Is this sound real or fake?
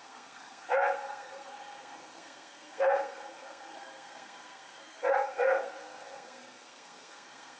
fake